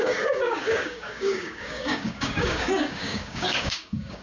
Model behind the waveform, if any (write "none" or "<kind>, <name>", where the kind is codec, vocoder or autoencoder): codec, DAC